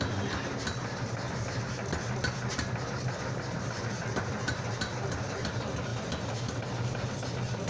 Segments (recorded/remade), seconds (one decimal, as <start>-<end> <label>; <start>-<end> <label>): 0.0-7.7 recorded